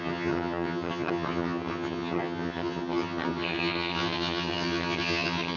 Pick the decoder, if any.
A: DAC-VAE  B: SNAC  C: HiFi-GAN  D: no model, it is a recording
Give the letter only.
C